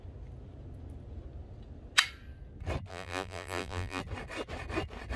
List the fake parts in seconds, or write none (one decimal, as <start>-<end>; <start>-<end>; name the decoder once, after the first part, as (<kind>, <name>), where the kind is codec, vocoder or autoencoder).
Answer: 2.9-4.0 (vocoder, BigVGAN v2)